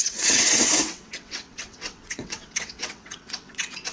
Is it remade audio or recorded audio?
remade